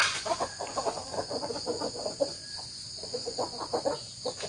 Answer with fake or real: fake